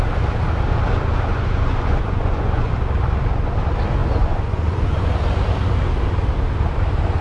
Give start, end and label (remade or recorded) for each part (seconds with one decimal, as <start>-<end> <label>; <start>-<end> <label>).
0.0-1.3 recorded; 1.3-2.7 remade; 2.7-4.0 recorded; 4.0-5.1 remade; 5.1-7.2 recorded